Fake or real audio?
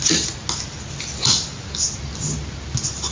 real